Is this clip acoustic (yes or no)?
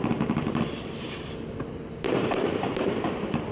no